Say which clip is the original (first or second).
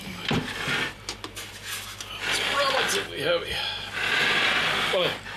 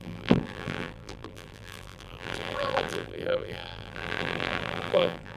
first